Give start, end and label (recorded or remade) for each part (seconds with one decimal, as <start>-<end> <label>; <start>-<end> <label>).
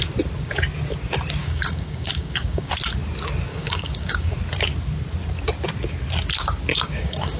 0.0-1.4 recorded; 1.4-2.7 remade; 2.7-3.5 recorded; 3.5-4.3 remade; 4.3-6.7 recorded; 6.7-7.4 remade